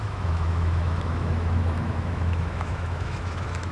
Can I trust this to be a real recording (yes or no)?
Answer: no